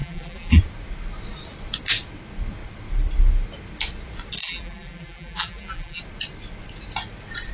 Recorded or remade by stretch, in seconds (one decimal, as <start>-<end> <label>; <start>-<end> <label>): 0.0-0.6 remade; 0.6-4.4 recorded; 4.4-6.0 remade; 6.0-7.5 recorded